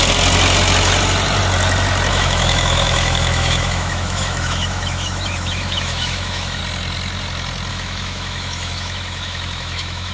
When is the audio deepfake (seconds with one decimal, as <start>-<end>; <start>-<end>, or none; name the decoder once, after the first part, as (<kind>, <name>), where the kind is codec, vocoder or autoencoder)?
2.1-6.6 (autoencoder, DAC-VAE); 7.7-10.1